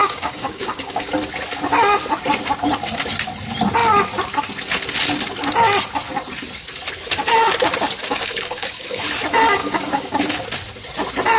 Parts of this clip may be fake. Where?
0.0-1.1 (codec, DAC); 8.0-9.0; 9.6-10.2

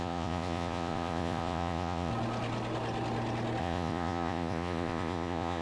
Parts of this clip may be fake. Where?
0.0-2.1 (vocoder, Vocos); 3.6-5.6

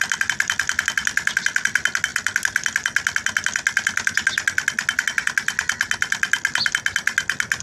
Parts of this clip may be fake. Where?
none

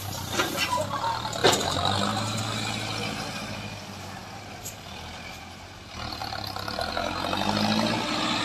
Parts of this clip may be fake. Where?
1.4-2.4 (vocoder, BigVGAN v2)

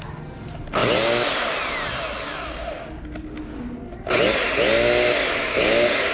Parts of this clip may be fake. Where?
5.4-6.1 (codec, DAC)

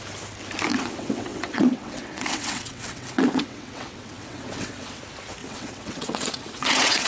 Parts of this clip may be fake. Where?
0.7-5.0 (vocoder, WaveNeXt); 5.4-7.1

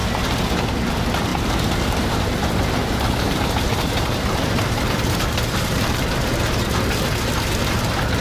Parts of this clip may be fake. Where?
1.3-6.0 (vocoder, BigVGAN v2)

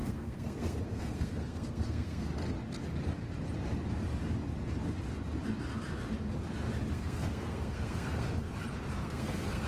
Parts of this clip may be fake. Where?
0.0-2.3 (codec, SNAC); 6.9-8.5; 9.0-9.7